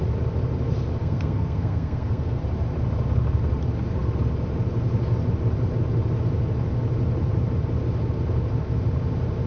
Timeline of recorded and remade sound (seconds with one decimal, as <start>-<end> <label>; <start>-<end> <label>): 0.0-1.0 recorded; 1.0-2.4 remade; 2.4-9.5 recorded